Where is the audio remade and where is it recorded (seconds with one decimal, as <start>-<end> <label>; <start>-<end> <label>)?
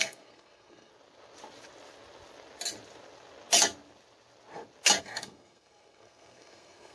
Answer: 0.0-0.9 remade; 0.9-5.0 recorded; 5.0-6.9 remade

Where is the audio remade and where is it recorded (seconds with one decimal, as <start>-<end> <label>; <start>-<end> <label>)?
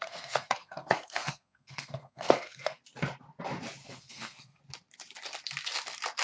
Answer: 0.0-2.8 remade; 2.8-3.8 recorded; 3.8-4.6 remade; 4.6-6.2 recorded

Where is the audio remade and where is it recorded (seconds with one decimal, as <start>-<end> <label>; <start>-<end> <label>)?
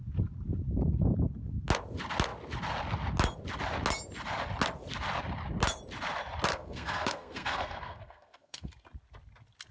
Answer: 0.0-6.5 recorded; 6.5-8.7 remade; 8.7-9.7 recorded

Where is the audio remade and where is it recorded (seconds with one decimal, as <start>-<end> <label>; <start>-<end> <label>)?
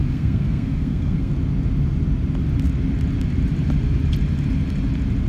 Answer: 0.0-1.3 remade; 1.3-5.3 recorded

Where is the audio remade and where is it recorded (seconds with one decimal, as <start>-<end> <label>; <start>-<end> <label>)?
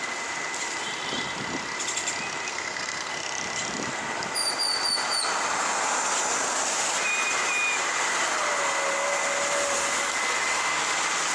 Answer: 0.0-2.5 recorded; 2.5-3.1 remade; 3.1-11.3 recorded